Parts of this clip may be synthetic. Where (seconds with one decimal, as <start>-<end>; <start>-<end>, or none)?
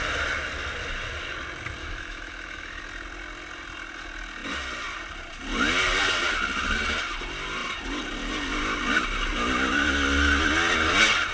1.8-2.8